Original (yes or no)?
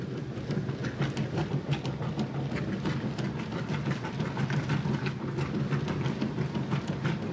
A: yes